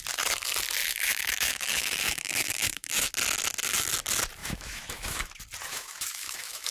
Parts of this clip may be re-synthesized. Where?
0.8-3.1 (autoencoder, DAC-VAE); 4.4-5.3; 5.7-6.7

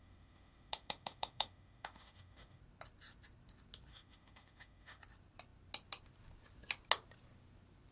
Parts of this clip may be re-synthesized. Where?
0.0-2.6 (autoencoder, DAC-VAE); 3.9-5.0

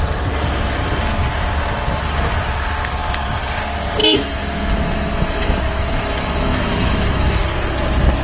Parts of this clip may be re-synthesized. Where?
4.0-7.4 (autoencoder, DAC-VAE)

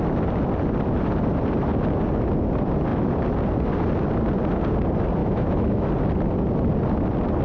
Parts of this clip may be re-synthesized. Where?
5.2-5.9 (autoencoder, DAC-VAE)

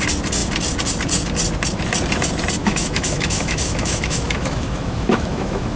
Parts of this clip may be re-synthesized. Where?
2.6-5.8 (autoencoder, DAC-VAE)

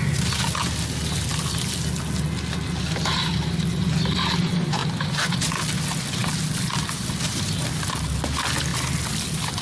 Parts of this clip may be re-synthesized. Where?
none

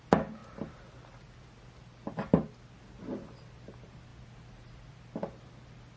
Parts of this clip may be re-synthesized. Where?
none

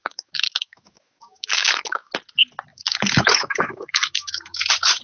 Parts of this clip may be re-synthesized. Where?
0.0-2.1 (autoencoder, DAC-VAE); 2.7-4.6